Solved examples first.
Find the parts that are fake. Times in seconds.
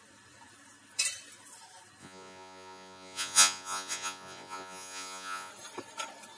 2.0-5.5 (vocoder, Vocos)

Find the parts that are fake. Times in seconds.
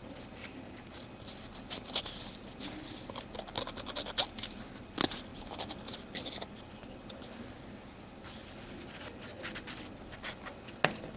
none